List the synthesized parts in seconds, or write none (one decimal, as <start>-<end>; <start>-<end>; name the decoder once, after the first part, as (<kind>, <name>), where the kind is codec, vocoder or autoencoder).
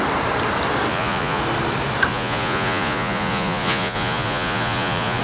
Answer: 0.9-1.4 (vocoder, Vocos); 2.1-5.2